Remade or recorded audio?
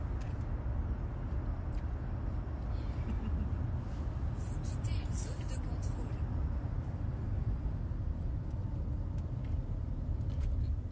recorded